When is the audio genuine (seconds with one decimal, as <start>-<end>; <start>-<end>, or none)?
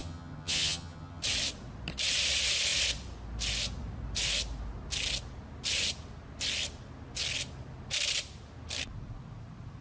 1.2-9.8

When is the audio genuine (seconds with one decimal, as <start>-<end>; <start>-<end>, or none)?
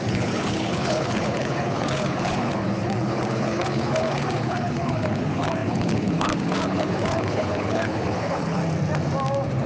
8.6-9.7